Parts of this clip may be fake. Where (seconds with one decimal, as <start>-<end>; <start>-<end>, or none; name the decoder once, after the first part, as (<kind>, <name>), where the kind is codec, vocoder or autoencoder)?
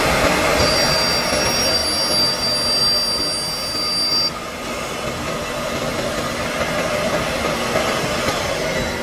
none